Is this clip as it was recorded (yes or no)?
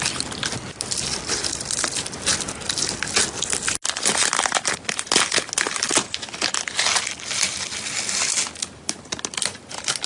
yes